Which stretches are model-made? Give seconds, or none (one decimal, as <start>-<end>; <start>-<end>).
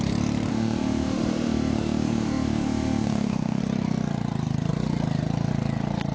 0.5-3.6